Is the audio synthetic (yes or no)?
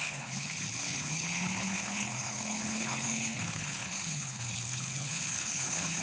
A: yes